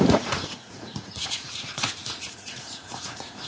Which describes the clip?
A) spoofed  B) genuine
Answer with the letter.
A